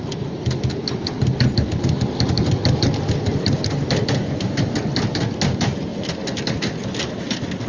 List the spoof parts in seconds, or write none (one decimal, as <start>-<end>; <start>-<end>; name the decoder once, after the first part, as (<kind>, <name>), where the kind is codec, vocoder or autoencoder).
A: 3.3-5.2 (vocoder, BigVGAN v2); 5.9-6.6